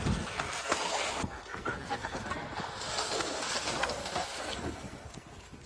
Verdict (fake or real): fake